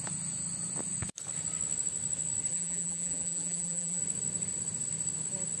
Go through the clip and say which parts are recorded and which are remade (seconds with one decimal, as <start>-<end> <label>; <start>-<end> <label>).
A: 0.0-2.5 recorded; 2.5-4.0 remade; 4.0-5.6 recorded